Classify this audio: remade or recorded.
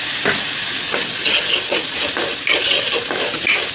recorded